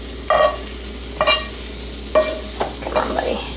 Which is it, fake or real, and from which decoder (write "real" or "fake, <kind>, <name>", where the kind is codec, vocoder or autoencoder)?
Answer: real